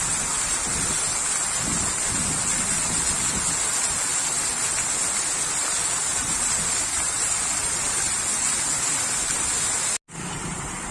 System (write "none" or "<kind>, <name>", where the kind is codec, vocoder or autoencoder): none